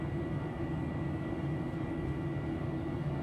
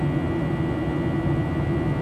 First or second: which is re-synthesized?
first